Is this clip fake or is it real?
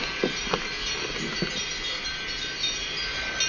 real